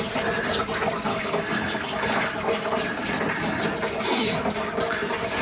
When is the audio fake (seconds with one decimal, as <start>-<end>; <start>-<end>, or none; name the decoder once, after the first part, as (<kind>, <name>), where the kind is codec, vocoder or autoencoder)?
1.1-2.3 (codec, DAC)